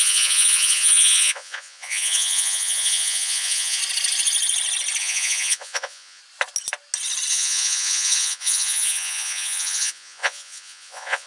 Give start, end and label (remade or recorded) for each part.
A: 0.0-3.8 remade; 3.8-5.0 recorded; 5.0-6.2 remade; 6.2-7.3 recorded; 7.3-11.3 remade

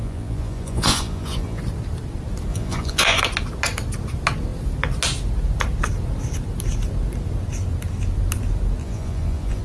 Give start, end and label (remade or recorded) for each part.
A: 0.0-1.6 remade; 1.6-2.5 recorded; 2.5-3.2 remade; 3.2-8.8 recorded; 8.8-9.6 remade

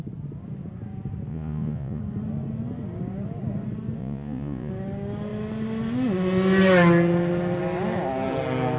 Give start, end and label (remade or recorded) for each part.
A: 0.0-1.3 recorded; 1.3-2.0 remade; 2.0-4.0 recorded; 4.0-4.7 remade; 4.7-8.8 recorded

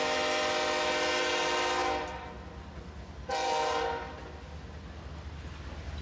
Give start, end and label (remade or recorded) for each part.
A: 0.0-6.0 recorded

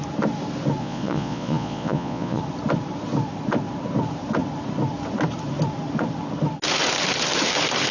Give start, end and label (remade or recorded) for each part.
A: 0.0-0.8 recorded; 0.8-2.4 remade; 2.4-7.9 recorded

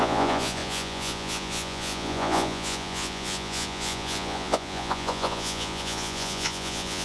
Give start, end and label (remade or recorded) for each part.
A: 0.0-7.0 remade

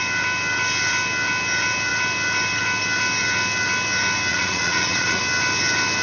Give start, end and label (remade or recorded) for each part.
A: 0.0-4.3 recorded; 4.3-5.2 remade; 5.2-6.0 recorded

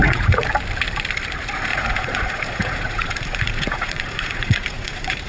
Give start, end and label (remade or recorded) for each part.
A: 0.0-0.5 remade; 0.5-1.7 recorded; 1.7-5.3 remade